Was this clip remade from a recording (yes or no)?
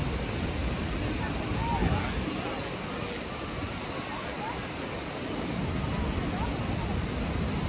no